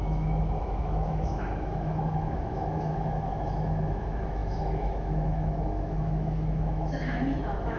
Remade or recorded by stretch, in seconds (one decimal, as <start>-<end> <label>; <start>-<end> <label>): 0.0-7.8 remade